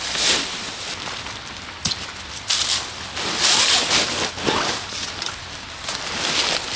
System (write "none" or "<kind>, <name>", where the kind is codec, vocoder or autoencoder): none